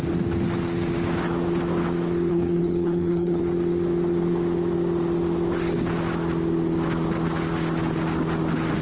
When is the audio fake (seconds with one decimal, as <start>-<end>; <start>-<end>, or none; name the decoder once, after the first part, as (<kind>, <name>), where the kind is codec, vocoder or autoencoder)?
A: 2.3-3.4 (codec, HILCodec)